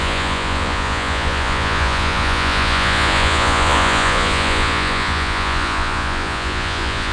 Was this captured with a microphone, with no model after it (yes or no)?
no